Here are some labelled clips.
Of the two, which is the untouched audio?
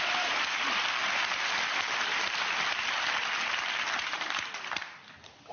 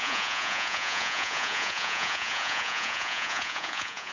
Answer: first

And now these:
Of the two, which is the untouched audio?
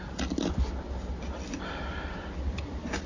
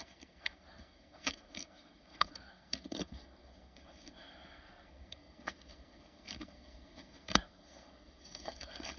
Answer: first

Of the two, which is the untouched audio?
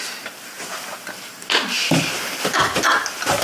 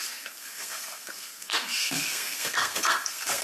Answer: first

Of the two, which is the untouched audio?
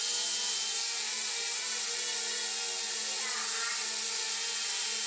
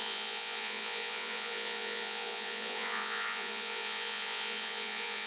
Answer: first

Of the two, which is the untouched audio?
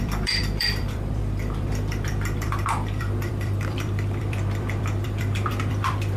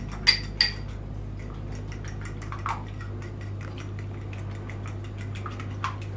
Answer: second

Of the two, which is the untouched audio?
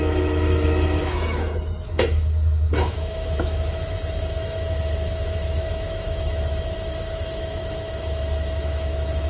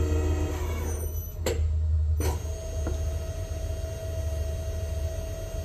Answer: second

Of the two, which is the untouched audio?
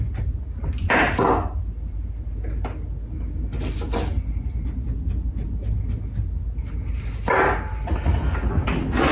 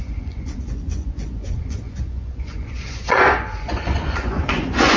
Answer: first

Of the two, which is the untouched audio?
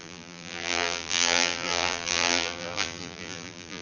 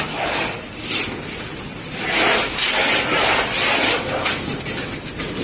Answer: second